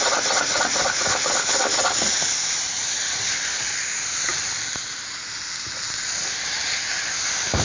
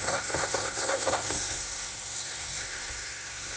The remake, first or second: second